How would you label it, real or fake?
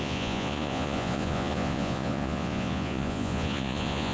fake